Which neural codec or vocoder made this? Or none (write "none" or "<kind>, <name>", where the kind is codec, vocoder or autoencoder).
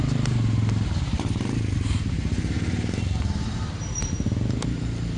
none